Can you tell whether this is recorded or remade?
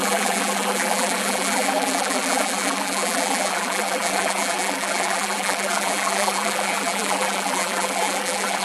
remade